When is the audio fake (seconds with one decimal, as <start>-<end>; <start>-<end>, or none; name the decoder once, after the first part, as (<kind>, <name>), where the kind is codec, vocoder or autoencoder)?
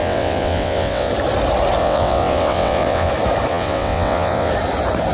0.0-1.1 (vocoder, WaveNeXt); 1.8-3.1; 3.5-4.5